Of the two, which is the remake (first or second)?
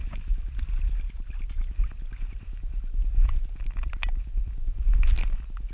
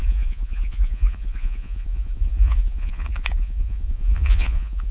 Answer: second